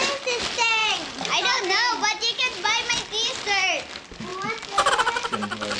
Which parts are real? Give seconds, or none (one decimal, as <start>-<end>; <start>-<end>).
0.0-5.8